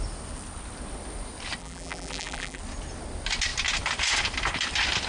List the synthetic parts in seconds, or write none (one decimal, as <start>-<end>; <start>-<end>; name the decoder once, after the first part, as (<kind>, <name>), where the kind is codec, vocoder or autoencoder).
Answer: 1.6-2.6 (vocoder, BigVGAN v2)